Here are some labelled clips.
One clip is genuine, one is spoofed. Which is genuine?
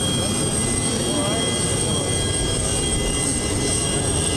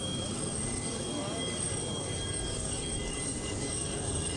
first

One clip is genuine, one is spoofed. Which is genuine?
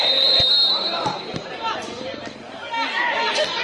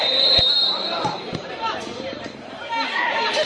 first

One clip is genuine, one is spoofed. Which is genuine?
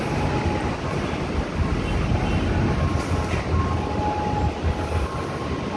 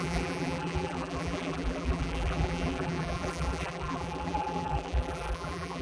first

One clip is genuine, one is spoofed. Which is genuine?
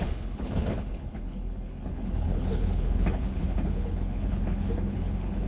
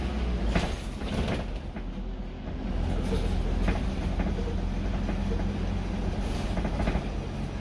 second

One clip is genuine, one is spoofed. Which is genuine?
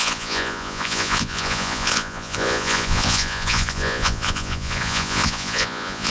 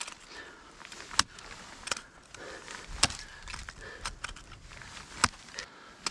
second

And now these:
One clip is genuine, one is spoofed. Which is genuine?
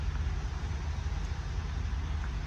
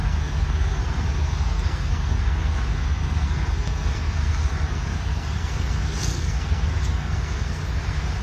first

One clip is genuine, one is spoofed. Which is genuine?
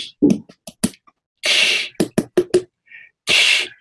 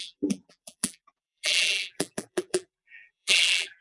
first